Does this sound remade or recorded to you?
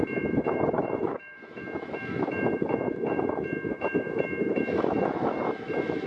remade